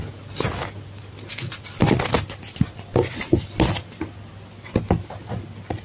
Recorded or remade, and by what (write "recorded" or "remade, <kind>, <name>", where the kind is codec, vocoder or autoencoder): recorded